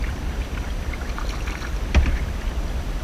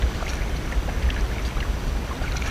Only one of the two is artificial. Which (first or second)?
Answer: first